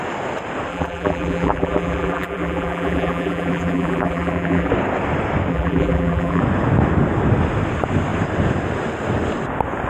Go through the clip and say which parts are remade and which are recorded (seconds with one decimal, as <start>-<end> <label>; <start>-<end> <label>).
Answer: 0.0-0.7 recorded; 0.7-4.7 remade; 4.7-5.5 recorded; 5.5-6.4 remade; 6.4-9.9 recorded